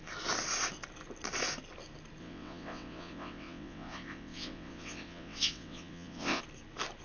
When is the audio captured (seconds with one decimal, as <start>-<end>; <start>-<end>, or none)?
0.0-2.2; 6.4-7.0